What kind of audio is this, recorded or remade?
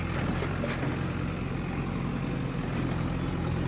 recorded